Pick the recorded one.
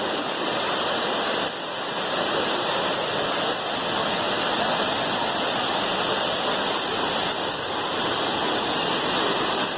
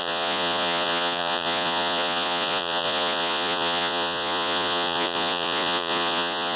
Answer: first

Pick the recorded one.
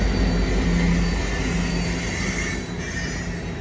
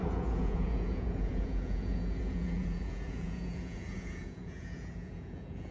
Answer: first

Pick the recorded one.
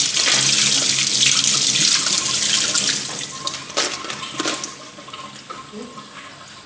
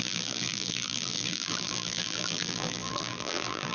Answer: first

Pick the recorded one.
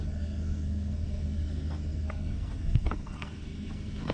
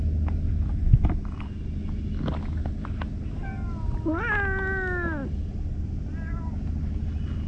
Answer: second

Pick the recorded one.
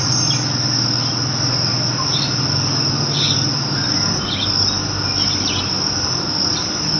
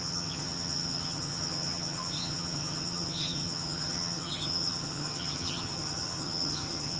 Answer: first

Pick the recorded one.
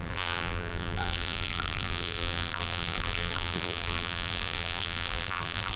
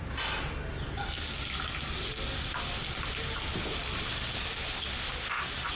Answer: second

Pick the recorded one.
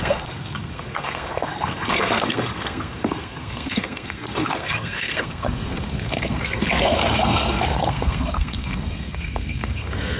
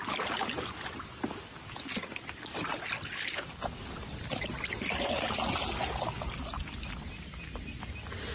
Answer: second